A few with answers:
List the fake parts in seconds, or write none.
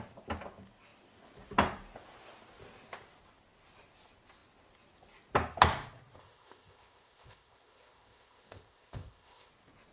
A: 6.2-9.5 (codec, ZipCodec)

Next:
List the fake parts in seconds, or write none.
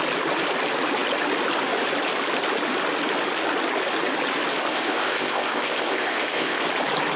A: 4.7-6.6 (codec, ZipCodec)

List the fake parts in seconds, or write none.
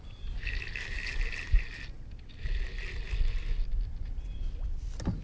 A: none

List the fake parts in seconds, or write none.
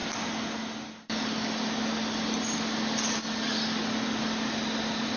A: none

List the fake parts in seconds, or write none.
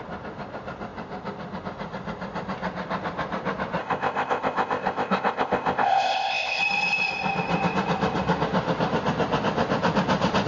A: 3.8-6.6 (codec, ZipCodec)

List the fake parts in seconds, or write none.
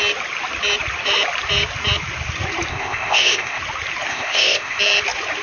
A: 2.7-3.6 (codec, ZipCodec); 4.1-4.8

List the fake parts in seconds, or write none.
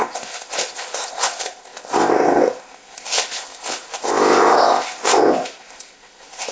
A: 0.0-6.5 (codec, ZipCodec)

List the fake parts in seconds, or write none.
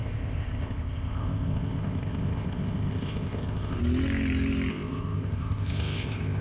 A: 0.0-3.8 (codec, ZipCodec); 4.7-6.4